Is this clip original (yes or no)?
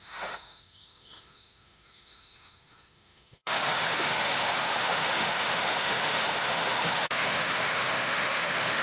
no